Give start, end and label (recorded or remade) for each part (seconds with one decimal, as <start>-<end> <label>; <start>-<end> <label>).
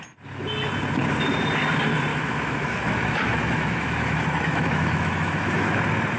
0.0-2.1 recorded; 2.1-5.8 remade; 5.8-6.2 recorded